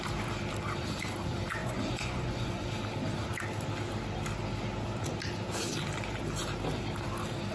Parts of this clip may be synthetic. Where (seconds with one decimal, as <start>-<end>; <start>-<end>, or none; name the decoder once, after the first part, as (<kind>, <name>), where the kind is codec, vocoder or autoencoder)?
1.6-2.7 (vocoder, Vocos)

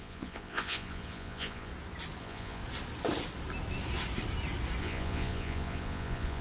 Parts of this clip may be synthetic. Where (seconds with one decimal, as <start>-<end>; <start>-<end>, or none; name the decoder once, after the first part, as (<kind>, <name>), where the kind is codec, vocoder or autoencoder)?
0.0-1.7 (vocoder, Vocos); 2.2-2.6; 4.8-6.4

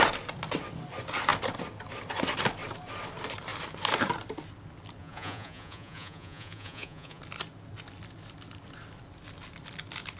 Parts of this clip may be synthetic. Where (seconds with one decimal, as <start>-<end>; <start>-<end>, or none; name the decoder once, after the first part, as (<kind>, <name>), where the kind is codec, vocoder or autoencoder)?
5.0-7.2 (vocoder, Vocos)

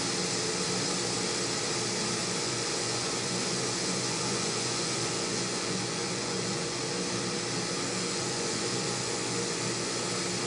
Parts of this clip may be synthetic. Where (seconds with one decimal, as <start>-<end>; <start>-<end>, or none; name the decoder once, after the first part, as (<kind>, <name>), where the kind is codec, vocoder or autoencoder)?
2.2-6.8 (vocoder, Vocos); 7.9-10.0

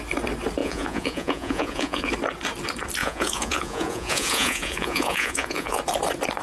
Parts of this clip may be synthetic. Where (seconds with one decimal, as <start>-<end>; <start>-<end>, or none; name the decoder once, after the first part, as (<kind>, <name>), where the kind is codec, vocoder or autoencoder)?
0.6-2.1 (vocoder, Vocos); 3.0-5.8

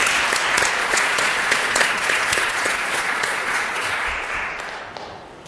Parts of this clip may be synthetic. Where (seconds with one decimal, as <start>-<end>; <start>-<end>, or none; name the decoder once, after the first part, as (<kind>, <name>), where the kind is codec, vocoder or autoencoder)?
0.8-4.1 (vocoder, Vocos)

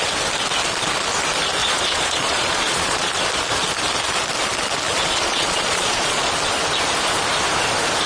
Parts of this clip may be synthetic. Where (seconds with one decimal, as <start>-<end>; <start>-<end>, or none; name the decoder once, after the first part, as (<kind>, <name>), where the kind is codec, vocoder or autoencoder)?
1.6-3.1 (vocoder, Vocos); 4.9-6.3